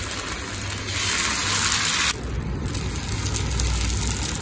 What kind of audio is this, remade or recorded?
recorded